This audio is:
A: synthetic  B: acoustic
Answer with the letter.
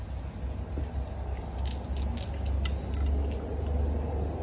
B